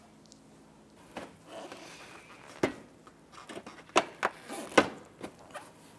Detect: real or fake real